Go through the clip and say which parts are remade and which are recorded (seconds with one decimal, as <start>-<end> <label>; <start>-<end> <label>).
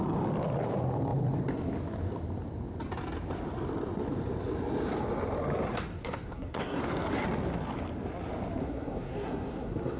0.0-5.9 recorded; 5.9-6.8 remade; 6.8-8.6 recorded; 8.6-10.0 remade